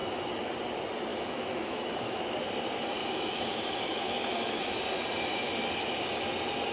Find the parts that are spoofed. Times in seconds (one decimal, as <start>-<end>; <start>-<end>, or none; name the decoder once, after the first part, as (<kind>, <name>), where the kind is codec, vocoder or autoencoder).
0.0-0.5 (autoencoder, DAC-VAE); 1.1-2.2; 3.0-4.8